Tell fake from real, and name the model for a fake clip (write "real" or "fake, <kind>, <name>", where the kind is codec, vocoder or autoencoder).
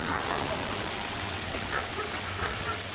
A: fake, vocoder, WaveNeXt